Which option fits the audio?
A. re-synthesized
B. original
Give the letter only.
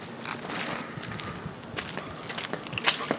B